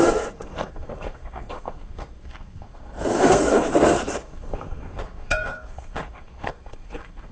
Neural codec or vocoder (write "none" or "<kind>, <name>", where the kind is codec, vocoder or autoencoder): codec, SNAC